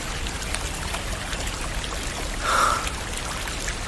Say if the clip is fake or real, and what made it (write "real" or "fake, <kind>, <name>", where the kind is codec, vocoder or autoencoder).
real